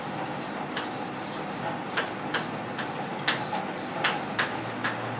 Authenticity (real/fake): real